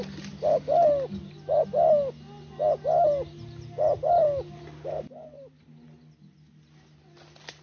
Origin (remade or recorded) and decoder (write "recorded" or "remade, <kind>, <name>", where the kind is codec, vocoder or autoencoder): recorded